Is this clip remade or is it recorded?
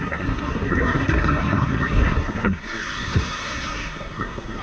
remade